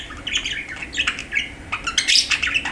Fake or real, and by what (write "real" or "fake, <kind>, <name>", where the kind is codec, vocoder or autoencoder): real